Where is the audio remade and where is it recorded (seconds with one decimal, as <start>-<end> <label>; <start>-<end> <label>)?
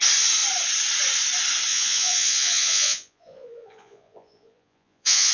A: 0.0-1.7 recorded; 1.7-5.3 remade